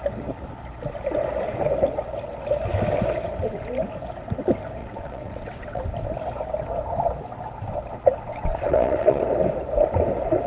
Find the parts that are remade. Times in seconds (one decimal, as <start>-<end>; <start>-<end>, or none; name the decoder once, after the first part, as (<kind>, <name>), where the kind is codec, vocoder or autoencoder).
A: 4.8-5.8 (vocoder, WaveNeXt); 8.3-9.2